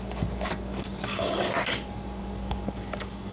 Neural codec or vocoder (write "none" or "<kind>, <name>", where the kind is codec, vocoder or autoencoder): codec, DAC